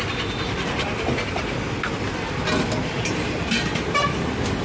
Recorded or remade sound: recorded